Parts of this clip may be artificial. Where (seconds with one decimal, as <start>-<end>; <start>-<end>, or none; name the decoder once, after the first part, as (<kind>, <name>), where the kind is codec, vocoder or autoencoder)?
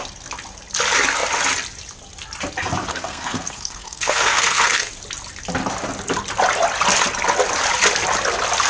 2.9-4.9 (codec, SNAC)